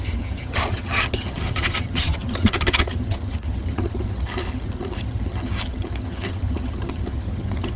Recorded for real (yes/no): no